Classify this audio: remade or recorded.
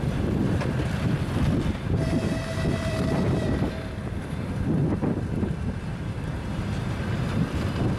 remade